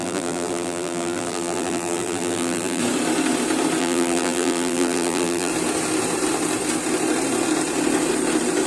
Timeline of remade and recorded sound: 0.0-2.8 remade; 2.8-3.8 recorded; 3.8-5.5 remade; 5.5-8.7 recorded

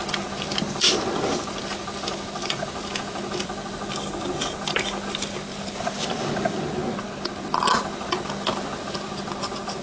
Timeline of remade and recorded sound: 0.0-9.8 recorded

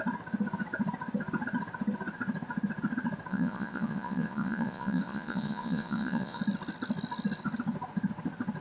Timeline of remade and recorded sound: 0.0-3.3 recorded; 3.3-6.4 remade; 6.4-8.6 recorded

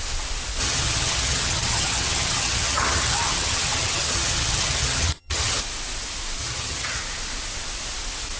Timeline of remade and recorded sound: 0.0-0.6 recorded; 0.6-5.6 remade; 5.6-6.4 recorded; 6.4-7.0 remade; 7.0-8.4 recorded

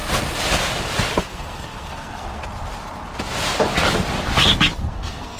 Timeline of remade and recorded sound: 0.0-1.2 recorded; 1.2-2.4 remade; 2.4-4.8 recorded; 4.8-5.4 remade

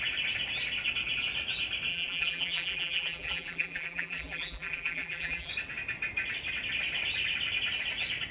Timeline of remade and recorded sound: 0.0-1.9 recorded; 1.9-5.5 remade; 5.5-8.3 recorded

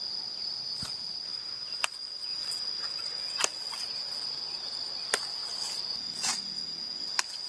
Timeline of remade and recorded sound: 0.0-1.3 recorded; 1.3-2.2 remade; 2.2-7.5 recorded

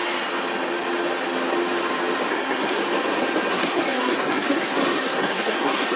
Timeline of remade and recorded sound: 0.0-2.3 recorded; 2.3-2.8 remade; 2.8-3.5 recorded; 3.5-6.0 remade